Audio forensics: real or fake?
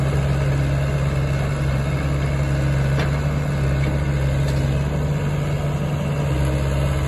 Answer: real